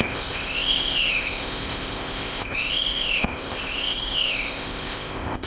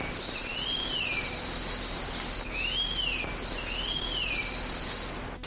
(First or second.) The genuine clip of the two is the second